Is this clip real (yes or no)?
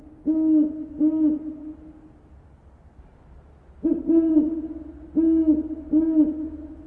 yes